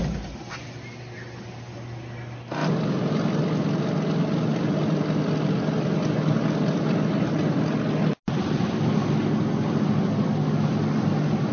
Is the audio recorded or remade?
recorded